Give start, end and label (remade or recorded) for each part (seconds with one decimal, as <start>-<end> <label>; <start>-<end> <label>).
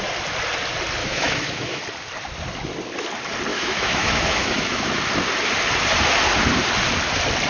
0.0-1.0 recorded; 1.0-1.8 remade; 1.8-3.5 recorded; 3.5-5.0 remade; 5.0-7.5 recorded